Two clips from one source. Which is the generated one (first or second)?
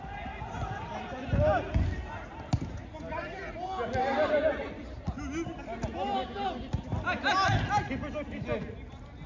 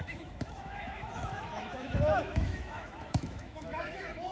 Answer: second